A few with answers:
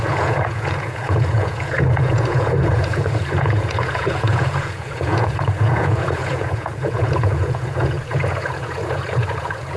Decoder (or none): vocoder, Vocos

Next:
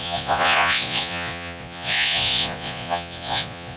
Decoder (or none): vocoder, Vocos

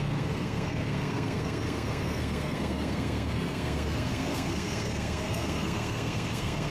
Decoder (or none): codec, SNAC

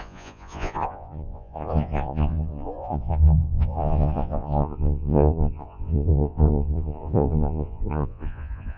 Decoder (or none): vocoder, Vocos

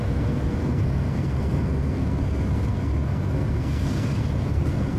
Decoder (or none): codec, SNAC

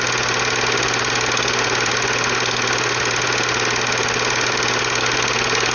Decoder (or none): none